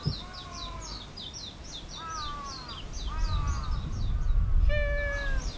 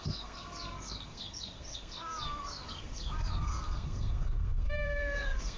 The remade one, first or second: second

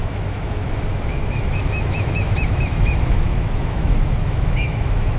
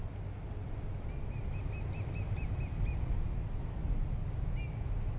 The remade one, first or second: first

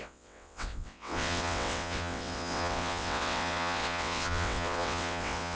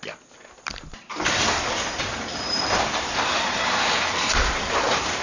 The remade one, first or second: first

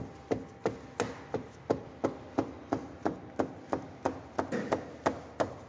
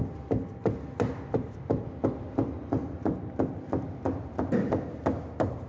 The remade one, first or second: second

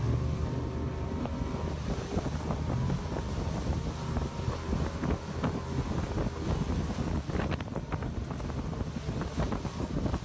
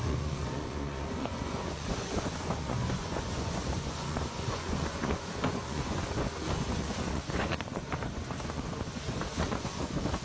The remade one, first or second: second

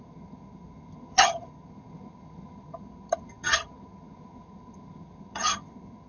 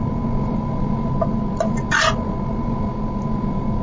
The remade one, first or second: first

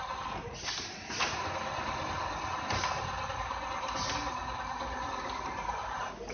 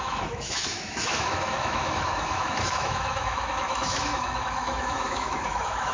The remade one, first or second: second